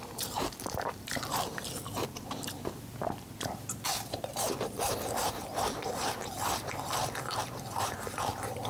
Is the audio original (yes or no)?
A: no